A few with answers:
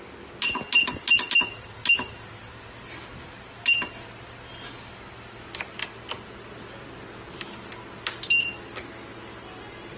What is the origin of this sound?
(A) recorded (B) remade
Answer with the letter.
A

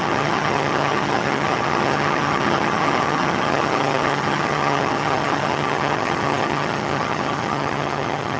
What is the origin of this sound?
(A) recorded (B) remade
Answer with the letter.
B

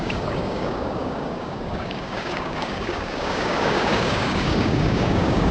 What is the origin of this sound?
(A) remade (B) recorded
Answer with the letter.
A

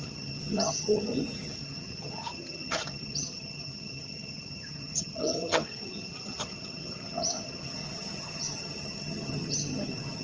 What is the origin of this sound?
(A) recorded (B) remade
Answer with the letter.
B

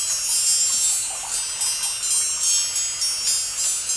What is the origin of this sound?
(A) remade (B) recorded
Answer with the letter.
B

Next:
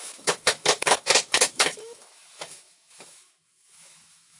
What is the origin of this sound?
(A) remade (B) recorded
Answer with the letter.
A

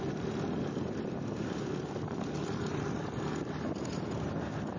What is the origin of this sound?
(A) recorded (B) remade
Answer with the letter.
A